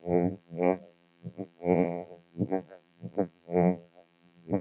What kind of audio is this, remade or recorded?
remade